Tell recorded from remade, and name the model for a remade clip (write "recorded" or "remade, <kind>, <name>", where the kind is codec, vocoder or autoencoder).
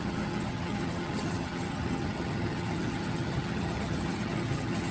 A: remade, vocoder, HiFi-GAN